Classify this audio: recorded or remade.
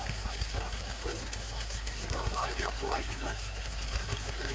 remade